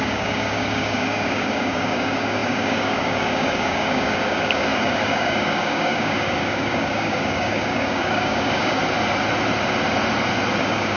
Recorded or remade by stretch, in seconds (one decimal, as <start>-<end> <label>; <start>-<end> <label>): 0.0-8.8 remade; 8.8-10.6 recorded; 10.6-11.0 remade